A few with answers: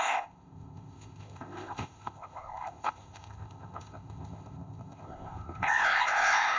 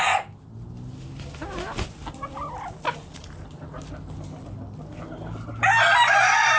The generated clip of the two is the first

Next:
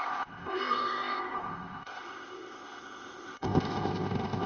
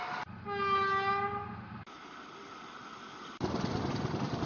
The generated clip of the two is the first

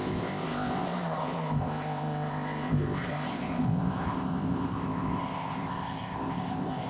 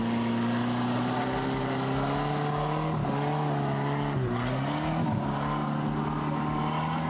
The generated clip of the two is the first